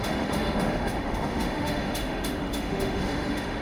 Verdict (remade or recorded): remade